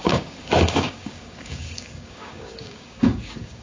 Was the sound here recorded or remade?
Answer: remade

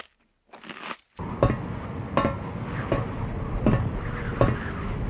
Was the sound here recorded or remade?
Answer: recorded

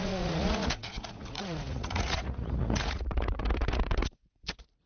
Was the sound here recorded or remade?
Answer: remade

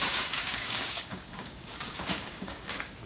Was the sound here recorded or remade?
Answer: remade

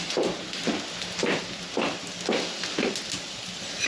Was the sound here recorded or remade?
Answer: recorded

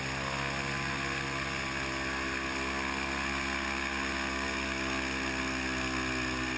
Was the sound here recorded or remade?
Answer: recorded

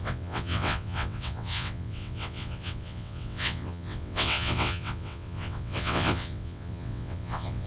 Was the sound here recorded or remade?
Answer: remade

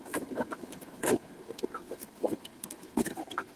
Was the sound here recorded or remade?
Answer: remade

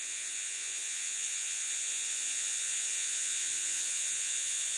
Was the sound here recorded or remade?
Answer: remade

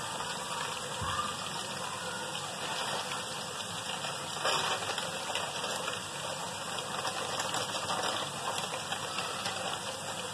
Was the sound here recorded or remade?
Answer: recorded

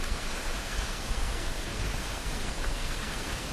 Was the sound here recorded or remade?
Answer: remade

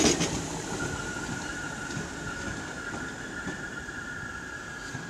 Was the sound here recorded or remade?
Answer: recorded